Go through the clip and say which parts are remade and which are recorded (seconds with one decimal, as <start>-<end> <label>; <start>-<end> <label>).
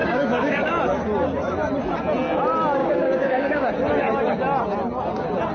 0.0-0.8 remade; 0.8-2.8 recorded; 2.8-3.7 remade; 3.7-5.5 recorded